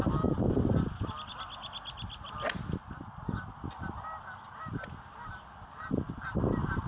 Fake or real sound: real